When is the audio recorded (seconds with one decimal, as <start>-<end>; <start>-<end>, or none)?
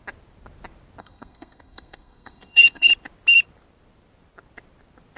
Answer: 0.0-1.0; 2.9-5.2